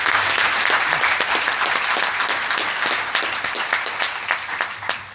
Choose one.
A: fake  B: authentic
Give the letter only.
B